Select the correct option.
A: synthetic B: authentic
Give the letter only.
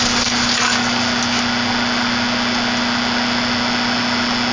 B